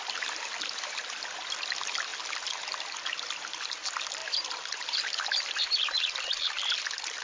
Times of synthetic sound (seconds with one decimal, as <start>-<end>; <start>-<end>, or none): 0.0-7.2